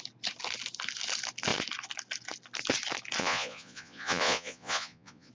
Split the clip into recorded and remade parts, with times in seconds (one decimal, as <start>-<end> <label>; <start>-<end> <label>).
0.0-3.2 recorded; 3.2-5.3 remade